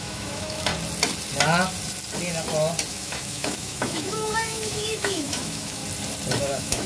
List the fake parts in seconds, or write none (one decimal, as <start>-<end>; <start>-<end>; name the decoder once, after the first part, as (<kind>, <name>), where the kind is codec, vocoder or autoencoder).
0.0-0.7 (autoencoder, DAC-VAE); 2.9-5.8; 6.4-6.9